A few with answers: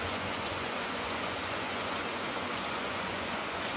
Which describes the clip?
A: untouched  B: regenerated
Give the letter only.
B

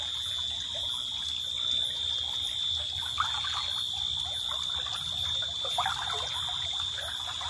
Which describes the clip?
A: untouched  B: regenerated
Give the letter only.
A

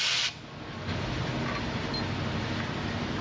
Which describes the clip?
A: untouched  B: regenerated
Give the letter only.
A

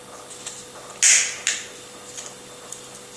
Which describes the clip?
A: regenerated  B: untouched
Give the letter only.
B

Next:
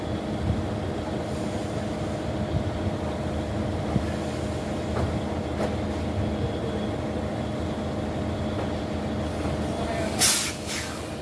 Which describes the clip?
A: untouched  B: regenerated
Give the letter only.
A